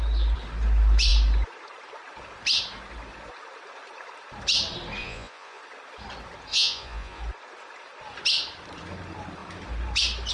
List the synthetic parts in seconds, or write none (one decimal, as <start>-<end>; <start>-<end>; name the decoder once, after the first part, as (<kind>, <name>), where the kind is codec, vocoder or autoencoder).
5.0-5.6 (vocoder, Vocos); 6.5-7.2